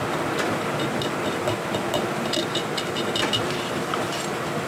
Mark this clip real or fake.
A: real